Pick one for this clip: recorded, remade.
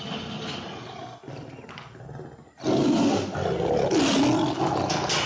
recorded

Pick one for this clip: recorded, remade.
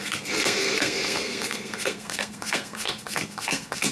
remade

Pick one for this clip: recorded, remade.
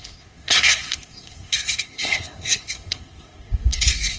remade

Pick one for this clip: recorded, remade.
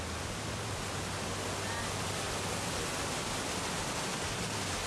recorded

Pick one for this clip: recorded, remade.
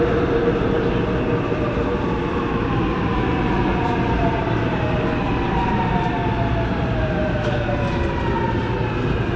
recorded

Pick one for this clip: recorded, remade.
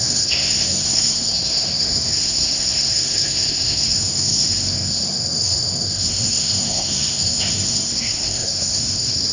remade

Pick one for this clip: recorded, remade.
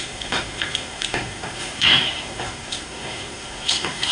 remade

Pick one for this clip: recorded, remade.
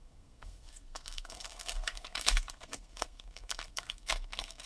remade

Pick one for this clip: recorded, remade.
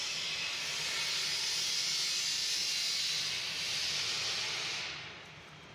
recorded